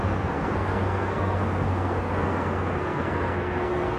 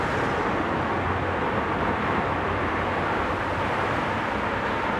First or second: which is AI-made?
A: first